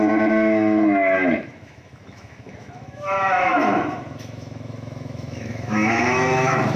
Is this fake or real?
fake